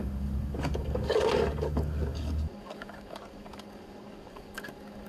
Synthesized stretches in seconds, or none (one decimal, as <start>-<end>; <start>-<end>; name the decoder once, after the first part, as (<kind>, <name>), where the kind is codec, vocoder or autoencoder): 0.0-5.1 (codec, DAC)